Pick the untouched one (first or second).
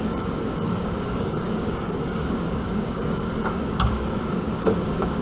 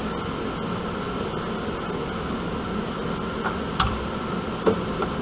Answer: second